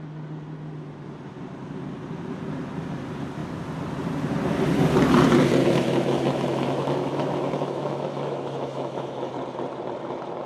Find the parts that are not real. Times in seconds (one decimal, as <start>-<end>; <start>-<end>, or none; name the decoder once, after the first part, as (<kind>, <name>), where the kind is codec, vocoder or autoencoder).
5.6-9.3 (autoencoder, DAC-VAE)